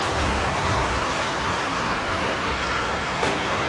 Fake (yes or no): yes